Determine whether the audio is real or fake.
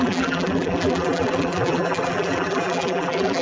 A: fake